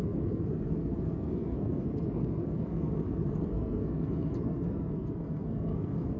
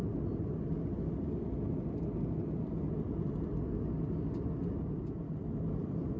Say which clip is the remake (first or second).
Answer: first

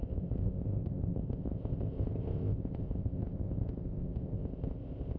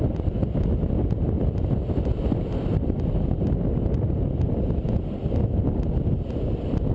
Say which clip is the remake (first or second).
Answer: first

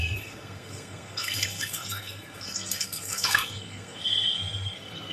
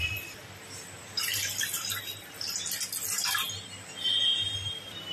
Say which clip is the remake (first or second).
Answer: first